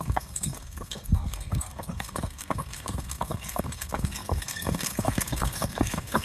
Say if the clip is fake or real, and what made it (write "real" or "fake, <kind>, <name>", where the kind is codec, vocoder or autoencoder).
fake, codec, SNAC